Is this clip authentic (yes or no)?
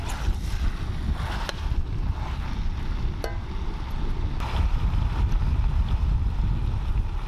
yes